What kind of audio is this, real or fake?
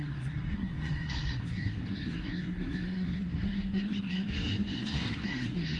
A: fake